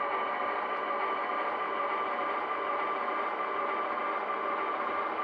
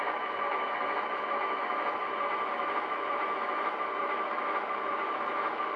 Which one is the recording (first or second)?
first